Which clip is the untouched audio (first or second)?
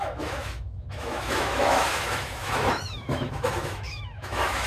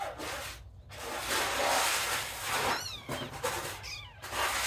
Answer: second